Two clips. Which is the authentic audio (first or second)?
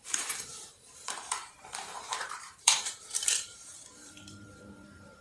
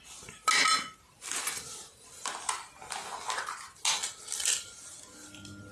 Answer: second